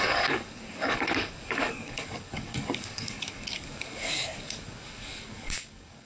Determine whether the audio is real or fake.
fake